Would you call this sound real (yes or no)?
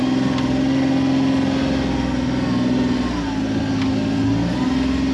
yes